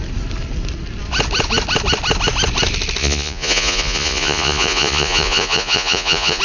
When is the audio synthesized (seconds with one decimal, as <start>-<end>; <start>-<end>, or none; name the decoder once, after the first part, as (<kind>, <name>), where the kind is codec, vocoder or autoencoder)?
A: 3.0-6.4 (vocoder, Vocos)